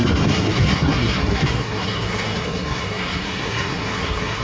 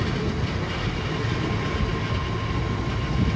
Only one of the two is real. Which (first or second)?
second